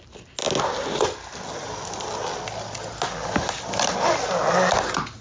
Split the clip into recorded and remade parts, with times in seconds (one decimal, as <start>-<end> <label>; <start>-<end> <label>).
0.0-5.2 recorded